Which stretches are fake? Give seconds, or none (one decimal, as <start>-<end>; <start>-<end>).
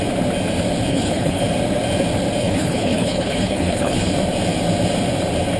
0.9-1.4; 2.4-4.1